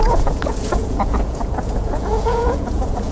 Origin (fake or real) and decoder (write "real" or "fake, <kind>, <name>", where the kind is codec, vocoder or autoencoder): fake, vocoder, Vocos